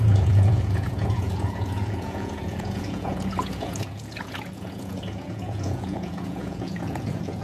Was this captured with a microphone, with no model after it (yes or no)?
no